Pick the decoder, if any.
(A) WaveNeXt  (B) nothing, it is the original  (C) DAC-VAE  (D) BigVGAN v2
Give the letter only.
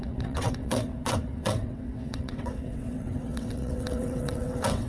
A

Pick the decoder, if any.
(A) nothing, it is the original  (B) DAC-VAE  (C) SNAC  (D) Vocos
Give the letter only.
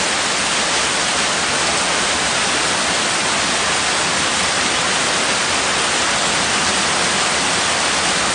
A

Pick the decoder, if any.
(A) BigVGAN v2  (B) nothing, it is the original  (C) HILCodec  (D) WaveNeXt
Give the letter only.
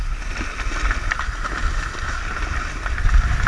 B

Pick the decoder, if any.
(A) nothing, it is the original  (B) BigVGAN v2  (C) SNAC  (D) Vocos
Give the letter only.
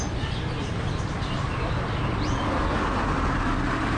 A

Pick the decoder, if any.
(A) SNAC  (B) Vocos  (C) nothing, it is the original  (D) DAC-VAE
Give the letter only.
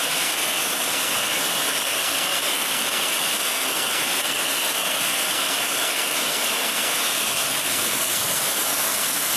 A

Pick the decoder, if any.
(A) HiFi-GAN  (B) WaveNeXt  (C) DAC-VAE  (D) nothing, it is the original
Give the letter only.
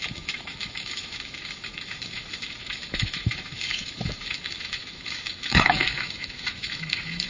C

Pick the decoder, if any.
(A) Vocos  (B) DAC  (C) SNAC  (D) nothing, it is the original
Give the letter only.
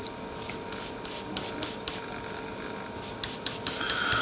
D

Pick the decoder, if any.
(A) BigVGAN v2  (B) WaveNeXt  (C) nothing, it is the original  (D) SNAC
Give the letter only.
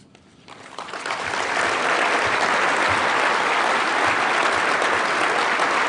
C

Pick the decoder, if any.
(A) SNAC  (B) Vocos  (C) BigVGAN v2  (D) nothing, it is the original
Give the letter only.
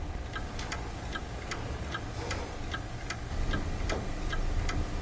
D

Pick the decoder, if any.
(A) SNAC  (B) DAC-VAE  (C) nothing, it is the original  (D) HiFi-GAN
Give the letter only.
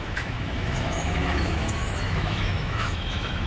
B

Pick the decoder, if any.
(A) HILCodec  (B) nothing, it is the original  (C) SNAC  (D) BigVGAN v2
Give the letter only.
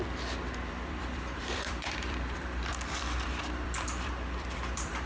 D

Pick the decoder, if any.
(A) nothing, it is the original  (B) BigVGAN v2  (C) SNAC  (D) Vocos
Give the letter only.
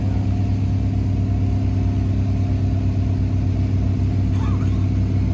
A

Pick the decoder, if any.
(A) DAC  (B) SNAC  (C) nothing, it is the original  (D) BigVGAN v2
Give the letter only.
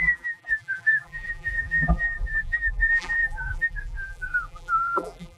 D